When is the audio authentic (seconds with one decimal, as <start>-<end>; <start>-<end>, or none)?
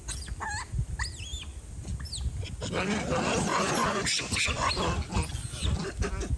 0.0-3.5; 4.7-6.4